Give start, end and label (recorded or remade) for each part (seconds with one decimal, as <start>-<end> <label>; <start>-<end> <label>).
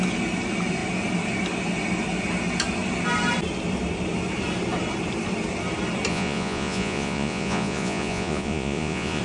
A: 0.0-6.1 recorded; 6.1-9.2 remade